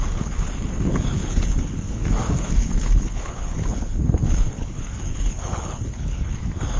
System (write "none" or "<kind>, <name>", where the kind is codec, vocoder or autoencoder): codec, HILCodec